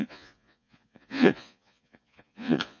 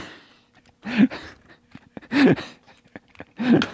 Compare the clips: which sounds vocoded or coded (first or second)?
first